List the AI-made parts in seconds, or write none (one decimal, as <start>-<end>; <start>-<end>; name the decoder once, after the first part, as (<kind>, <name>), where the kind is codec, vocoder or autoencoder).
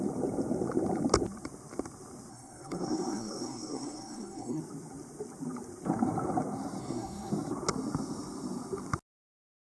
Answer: 2.3-4.6 (codec, SNAC); 6.8-7.3